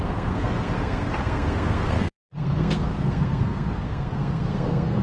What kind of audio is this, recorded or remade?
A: remade